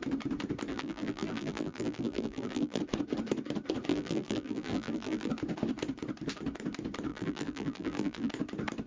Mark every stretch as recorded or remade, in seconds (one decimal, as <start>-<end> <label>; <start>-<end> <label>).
0.0-0.7 recorded; 0.7-2.8 remade; 2.8-3.9 recorded; 3.9-5.3 remade; 5.3-7.1 recorded; 7.1-8.3 remade; 8.3-8.9 recorded